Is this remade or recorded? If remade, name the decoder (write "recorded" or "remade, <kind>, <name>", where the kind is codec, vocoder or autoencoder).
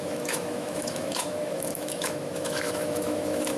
remade, autoencoder, DAC-VAE